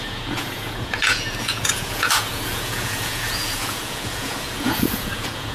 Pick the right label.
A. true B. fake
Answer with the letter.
B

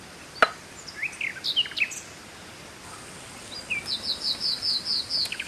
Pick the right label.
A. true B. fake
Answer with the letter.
A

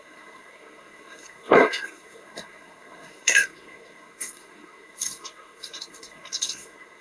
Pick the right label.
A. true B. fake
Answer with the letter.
B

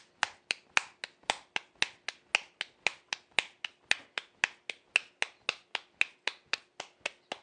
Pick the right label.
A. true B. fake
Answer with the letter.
A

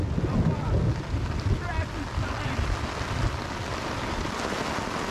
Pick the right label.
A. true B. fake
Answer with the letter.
A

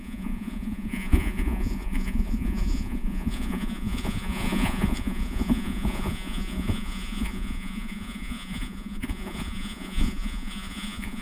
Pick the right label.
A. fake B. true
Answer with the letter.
A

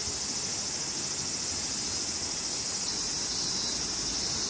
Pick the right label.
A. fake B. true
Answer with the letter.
B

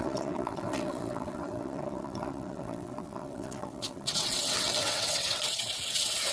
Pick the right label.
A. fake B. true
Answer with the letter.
A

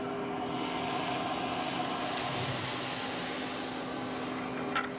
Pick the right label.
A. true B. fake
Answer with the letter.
A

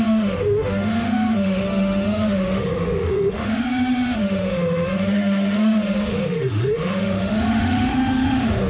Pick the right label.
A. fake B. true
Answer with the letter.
A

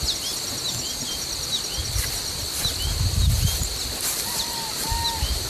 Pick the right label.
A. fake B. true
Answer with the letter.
B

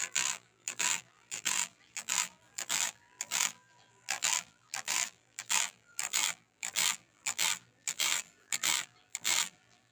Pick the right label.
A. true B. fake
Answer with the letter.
B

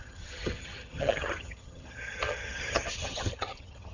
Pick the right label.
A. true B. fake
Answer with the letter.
B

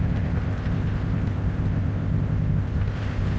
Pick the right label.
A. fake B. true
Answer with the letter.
A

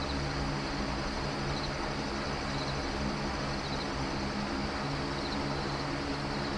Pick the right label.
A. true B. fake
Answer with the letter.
A